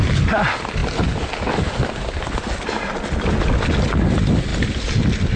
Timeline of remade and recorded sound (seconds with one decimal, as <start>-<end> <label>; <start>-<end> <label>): 0.0-5.4 recorded